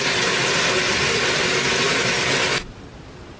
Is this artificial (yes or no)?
no